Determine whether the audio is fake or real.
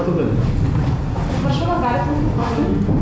real